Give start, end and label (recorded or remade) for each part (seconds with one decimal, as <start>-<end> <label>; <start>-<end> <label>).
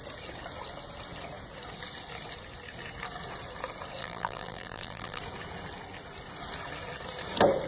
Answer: 0.0-4.0 recorded; 4.0-5.2 remade; 5.2-7.7 recorded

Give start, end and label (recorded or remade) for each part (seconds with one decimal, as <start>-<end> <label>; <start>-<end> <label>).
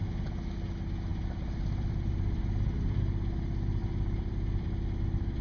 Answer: 0.0-1.1 recorded; 1.1-2.4 remade; 2.4-3.8 recorded; 3.8-5.4 remade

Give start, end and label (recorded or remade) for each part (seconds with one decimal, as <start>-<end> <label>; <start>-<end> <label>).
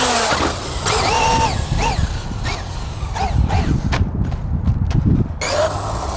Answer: 0.0-6.2 recorded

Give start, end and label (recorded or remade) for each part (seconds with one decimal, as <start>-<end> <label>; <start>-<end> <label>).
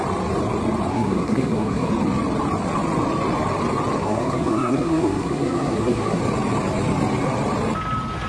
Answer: 0.0-0.9 recorded; 0.9-1.9 remade; 1.9-4.0 recorded; 4.0-6.2 remade; 6.2-8.3 recorded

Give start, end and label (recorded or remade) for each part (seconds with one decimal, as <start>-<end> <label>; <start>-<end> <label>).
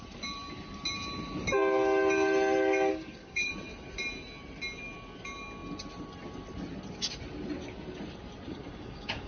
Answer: 0.0-2.9 recorded; 2.9-3.5 remade; 3.5-8.5 recorded; 8.5-9.3 remade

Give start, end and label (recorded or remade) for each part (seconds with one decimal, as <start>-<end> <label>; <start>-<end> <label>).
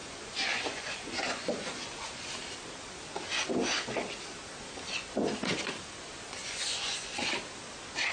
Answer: 0.0-2.3 remade; 2.3-6.4 recorded; 6.4-7.3 remade; 7.3-8.1 recorded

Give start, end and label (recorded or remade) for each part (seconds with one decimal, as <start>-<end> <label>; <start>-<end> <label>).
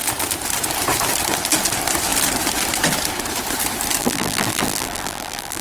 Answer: 0.0-4.0 recorded; 4.0-5.6 remade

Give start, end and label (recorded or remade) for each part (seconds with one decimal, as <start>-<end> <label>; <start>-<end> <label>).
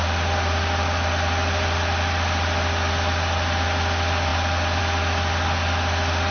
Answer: 0.0-6.3 recorded